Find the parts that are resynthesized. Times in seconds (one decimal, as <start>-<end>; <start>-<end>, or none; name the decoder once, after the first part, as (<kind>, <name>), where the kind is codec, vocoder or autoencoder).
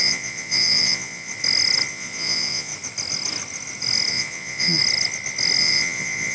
0.0-1.3 (vocoder, Vocos); 1.9-2.7; 4.1-4.8; 5.6-6.3